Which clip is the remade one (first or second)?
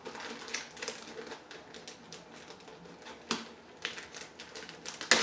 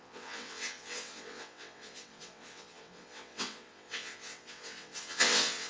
second